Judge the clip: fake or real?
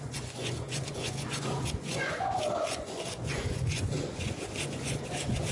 fake